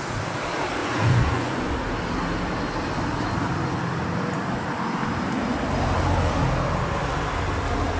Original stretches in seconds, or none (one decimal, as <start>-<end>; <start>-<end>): 0.0-0.8; 1.7-8.0